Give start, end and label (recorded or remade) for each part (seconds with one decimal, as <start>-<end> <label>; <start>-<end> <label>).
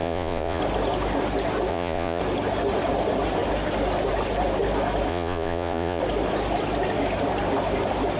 0.0-0.6 remade; 0.6-1.7 recorded; 1.7-2.2 remade; 2.2-5.1 recorded; 5.1-6.0 remade; 6.0-8.2 recorded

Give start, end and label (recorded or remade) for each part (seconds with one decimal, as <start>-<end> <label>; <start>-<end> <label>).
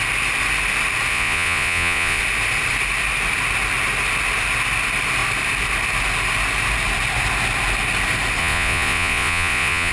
0.0-1.1 recorded; 1.1-2.2 remade; 2.2-8.4 recorded; 8.4-9.9 remade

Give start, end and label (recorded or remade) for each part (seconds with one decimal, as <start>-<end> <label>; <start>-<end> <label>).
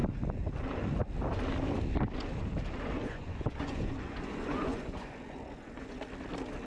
0.0-3.1 recorded; 3.1-6.0 remade; 6.0-6.7 recorded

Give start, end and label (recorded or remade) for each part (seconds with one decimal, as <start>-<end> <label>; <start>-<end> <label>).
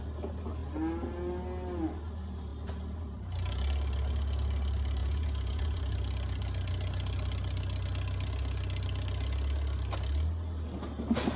0.0-5.0 recorded; 5.0-5.8 remade; 5.8-11.4 recorded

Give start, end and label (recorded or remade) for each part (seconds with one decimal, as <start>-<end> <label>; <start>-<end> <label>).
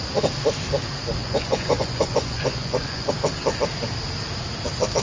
0.0-1.2 recorded; 1.2-3.1 remade; 3.1-5.0 recorded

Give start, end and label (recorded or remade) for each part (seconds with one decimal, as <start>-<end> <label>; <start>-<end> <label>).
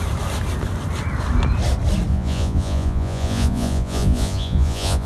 0.0-2.1 recorded; 2.1-5.1 remade